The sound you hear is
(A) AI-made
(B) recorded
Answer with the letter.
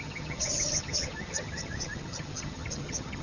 A